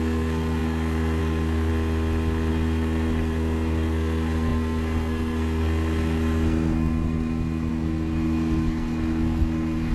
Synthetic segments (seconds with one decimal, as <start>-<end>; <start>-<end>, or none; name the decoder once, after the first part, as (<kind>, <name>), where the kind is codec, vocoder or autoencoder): 0.0-1.7 (codec, SNAC); 2.5-9.9